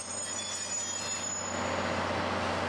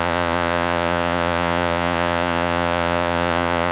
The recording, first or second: first